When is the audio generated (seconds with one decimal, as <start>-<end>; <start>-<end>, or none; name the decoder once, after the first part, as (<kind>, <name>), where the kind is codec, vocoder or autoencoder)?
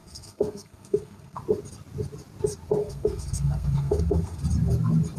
0.0-1.4 (codec, SNAC); 2.8-4.4